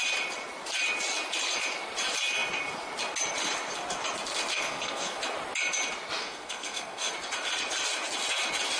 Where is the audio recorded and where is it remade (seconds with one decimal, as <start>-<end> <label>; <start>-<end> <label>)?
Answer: 0.0-4.5 recorded; 4.5-5.2 remade; 5.2-6.2 recorded; 6.2-7.1 remade; 7.1-8.8 recorded